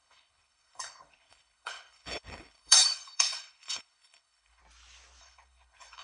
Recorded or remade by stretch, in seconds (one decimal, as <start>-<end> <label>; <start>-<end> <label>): 0.0-4.6 remade; 4.6-5.2 recorded; 5.2-6.0 remade